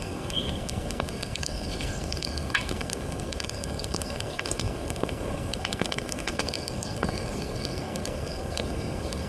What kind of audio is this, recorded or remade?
remade